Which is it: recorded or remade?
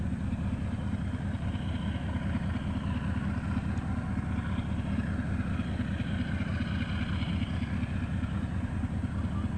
recorded